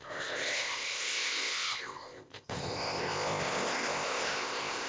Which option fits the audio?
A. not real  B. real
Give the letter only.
A